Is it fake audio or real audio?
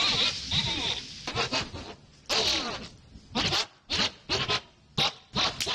real